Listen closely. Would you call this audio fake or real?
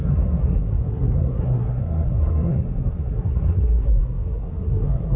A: fake